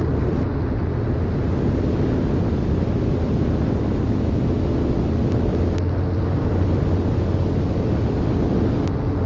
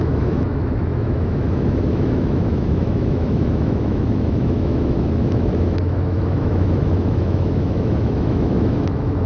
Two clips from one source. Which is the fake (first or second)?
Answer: second